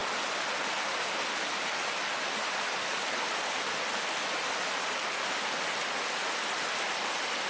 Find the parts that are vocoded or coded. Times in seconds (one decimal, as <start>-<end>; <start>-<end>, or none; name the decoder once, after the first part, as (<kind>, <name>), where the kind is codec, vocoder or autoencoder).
none

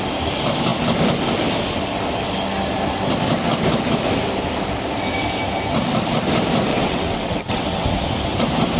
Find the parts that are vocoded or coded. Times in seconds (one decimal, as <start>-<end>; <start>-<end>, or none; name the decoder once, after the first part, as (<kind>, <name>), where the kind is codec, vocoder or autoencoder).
6.7-7.9 (vocoder, WaveNeXt)

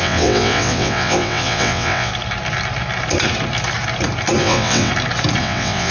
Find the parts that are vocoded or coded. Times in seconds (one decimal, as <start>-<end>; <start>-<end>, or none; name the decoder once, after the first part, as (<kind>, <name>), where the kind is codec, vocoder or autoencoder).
0.0-2.1 (vocoder, WaveNeXt); 4.4-4.9; 5.4-5.9

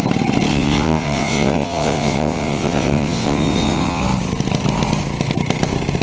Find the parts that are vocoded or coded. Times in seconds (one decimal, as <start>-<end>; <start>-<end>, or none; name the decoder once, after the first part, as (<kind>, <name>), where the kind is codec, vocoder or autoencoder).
0.5-4.0 (vocoder, WaveNeXt)

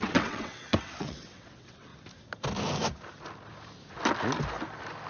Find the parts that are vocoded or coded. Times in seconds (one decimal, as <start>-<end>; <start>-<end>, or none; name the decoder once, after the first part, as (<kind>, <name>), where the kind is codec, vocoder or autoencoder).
0.0-1.9 (vocoder, WaveNeXt)

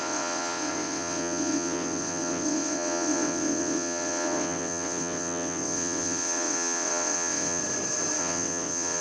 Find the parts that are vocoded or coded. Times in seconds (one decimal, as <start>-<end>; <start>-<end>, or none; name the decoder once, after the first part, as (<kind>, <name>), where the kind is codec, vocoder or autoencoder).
0.0-7.6 (vocoder, WaveNeXt); 8.2-9.0